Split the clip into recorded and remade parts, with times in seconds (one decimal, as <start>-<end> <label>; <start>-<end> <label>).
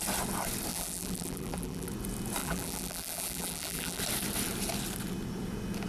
0.0-0.7 recorded; 0.7-1.9 remade; 1.9-2.4 recorded; 2.4-4.0 remade; 4.0-5.9 recorded